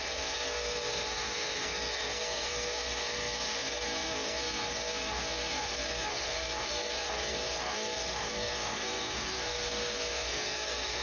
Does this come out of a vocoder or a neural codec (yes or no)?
yes